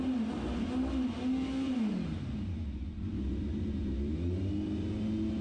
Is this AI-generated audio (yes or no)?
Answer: no